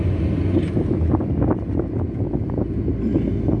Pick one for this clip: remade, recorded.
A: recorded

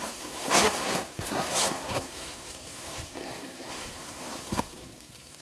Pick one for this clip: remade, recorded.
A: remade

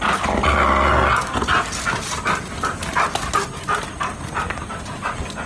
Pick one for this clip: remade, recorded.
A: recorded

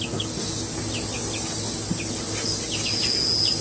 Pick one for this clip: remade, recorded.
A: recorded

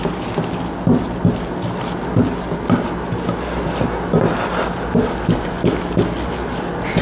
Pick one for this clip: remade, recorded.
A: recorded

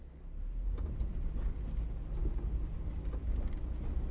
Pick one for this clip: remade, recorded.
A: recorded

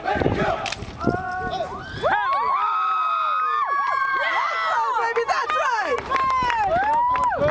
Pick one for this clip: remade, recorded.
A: recorded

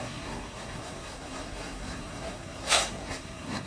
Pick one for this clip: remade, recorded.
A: remade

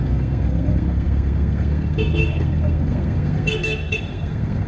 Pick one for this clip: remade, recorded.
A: remade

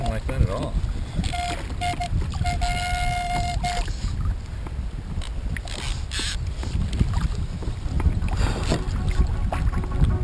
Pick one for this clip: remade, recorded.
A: recorded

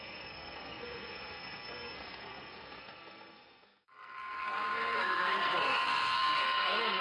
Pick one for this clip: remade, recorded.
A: remade